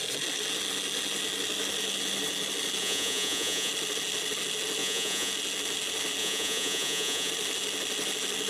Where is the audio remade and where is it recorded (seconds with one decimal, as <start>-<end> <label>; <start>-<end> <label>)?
0.0-2.8 recorded; 2.8-3.7 remade; 3.7-4.8 recorded; 4.8-5.3 remade; 5.3-6.2 recorded; 6.2-7.3 remade; 7.3-8.5 recorded